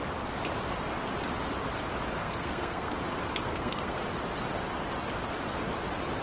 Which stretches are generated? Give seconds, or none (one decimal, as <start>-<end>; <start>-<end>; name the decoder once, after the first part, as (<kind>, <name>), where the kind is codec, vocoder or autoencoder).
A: 2.2-3.0 (codec, SNAC); 3.4-4.0